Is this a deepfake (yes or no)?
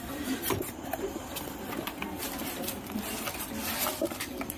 yes